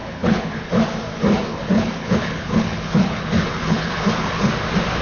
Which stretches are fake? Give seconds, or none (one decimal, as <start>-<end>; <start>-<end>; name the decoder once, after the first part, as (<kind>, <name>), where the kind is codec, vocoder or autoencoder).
0.0-0.7 (codec, HILCodec); 1.5-4.5